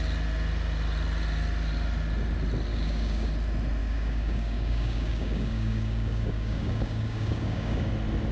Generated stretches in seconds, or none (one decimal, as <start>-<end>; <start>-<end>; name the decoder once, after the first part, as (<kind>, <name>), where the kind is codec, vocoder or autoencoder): 2.7-3.3 (codec, DAC); 3.8-7.9